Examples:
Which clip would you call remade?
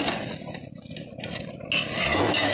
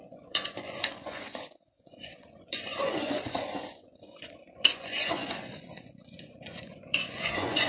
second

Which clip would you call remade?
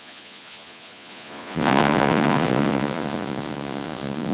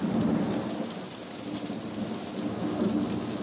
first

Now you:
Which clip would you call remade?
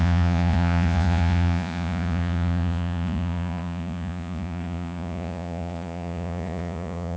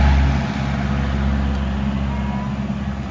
first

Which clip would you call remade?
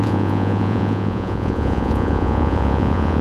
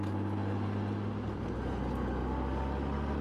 first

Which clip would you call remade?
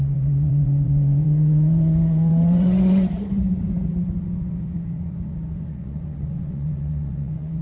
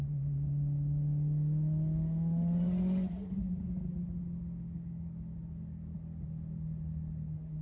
first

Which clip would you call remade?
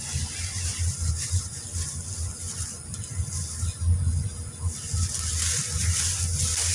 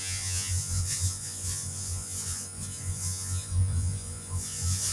second